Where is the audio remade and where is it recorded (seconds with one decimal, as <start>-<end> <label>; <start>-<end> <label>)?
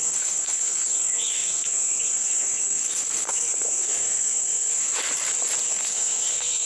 0.0-4.9 remade; 4.9-5.7 recorded; 5.7-6.6 remade